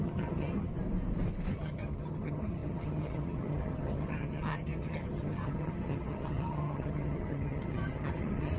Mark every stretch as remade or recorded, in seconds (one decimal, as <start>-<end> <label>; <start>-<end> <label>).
0.0-0.7 remade; 0.7-1.5 recorded; 1.5-8.6 remade